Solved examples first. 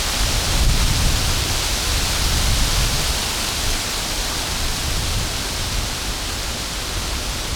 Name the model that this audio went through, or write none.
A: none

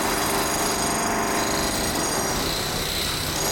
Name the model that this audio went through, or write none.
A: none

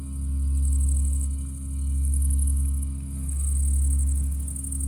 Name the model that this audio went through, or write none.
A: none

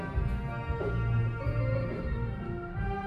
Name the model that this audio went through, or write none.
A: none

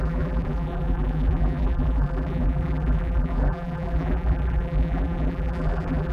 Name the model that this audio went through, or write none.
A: vocoder, BigVGAN v2